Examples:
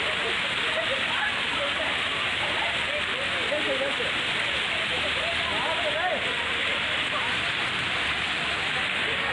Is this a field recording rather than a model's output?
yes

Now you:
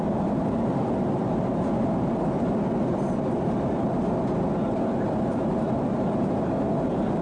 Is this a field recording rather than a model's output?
yes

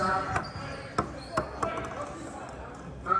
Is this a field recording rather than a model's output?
yes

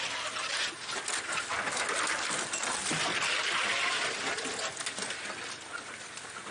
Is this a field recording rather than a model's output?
yes